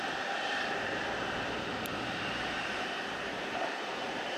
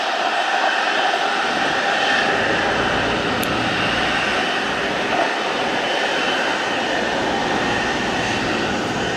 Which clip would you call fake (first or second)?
first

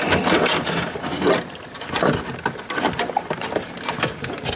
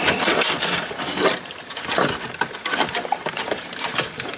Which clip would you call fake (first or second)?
second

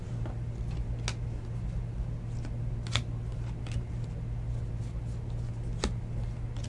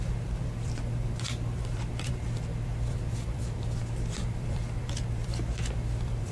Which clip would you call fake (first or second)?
second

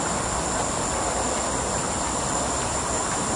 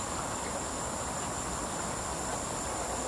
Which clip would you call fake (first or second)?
second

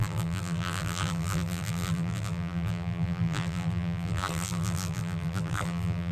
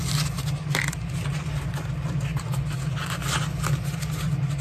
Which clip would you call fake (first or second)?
first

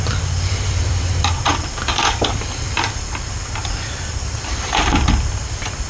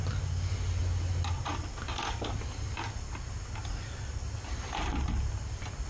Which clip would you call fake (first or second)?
first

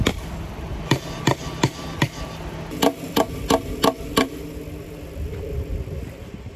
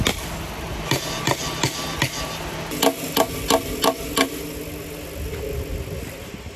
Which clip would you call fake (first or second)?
first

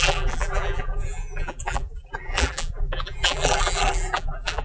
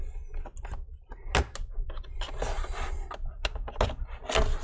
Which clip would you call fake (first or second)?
first